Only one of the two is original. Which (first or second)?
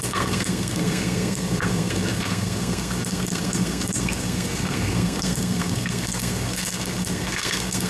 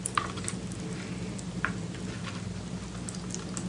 second